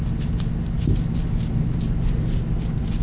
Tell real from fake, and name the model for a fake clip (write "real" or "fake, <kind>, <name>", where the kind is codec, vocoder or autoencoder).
real